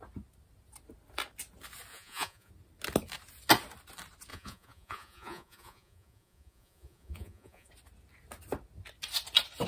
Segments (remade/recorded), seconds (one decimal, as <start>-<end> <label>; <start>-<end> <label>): 0.0-1.9 recorded; 1.9-2.5 remade; 2.5-4.3 recorded; 4.3-7.7 remade; 7.7-9.7 recorded